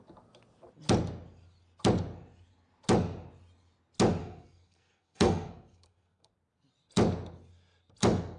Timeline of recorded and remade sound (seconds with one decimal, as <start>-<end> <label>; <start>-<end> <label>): 0.0-4.2 recorded; 4.2-6.3 remade; 6.3-8.4 recorded